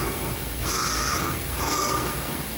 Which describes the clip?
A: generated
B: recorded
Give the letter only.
A